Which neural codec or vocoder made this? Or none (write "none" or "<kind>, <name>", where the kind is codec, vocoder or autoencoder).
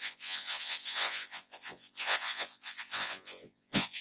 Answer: vocoder, Vocos